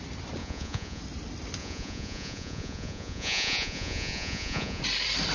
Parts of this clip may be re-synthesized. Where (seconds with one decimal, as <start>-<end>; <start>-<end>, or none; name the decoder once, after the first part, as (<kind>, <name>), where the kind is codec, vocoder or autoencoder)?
0.4-1.0 (vocoder, Vocos); 1.6-4.8